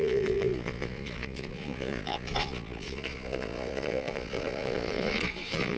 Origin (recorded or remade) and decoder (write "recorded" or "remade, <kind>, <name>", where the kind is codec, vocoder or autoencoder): remade, vocoder, Vocos